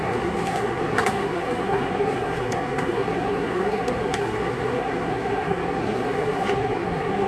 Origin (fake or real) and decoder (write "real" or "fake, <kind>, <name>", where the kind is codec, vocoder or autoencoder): fake, codec, SNAC